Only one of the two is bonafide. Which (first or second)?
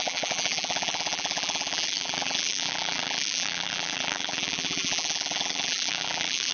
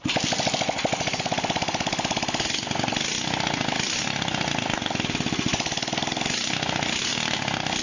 second